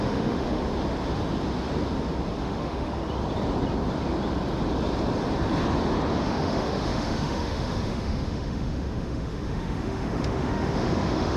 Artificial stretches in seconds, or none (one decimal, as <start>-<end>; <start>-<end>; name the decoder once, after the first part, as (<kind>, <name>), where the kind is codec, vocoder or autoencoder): 0.0-0.6 (autoencoder, DAC-VAE); 2.4-3.0; 6.2-11.4